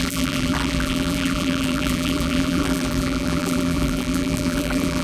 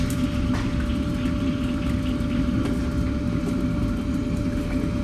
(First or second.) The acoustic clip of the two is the second